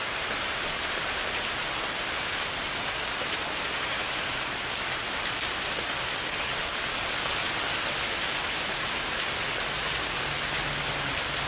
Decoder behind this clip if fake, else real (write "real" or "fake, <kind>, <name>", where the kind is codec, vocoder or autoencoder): real